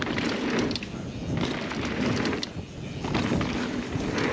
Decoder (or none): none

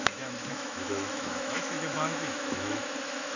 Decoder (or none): autoencoder, DAC-VAE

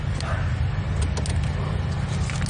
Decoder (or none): none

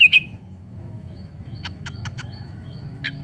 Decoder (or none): autoencoder, DAC-VAE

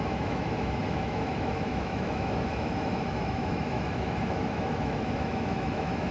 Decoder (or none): autoencoder, DAC-VAE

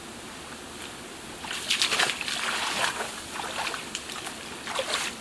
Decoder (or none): none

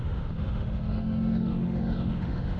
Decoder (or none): autoencoder, DAC-VAE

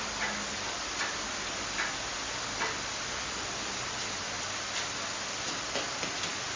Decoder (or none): none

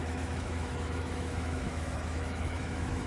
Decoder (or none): autoencoder, DAC-VAE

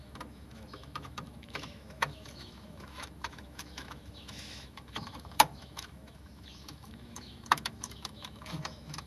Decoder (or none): autoencoder, DAC-VAE